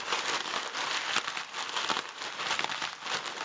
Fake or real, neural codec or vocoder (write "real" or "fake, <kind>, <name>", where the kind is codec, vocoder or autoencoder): real